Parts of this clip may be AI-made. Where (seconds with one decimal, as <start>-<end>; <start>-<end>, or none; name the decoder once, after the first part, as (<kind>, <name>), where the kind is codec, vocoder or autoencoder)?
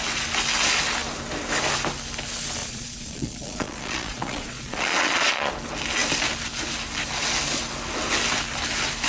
2.6-5.5 (vocoder, Vocos)